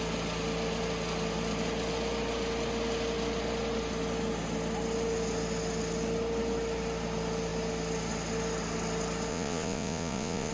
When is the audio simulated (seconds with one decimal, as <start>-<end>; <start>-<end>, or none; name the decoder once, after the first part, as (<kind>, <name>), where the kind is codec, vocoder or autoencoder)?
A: 9.3-10.5 (vocoder, Vocos)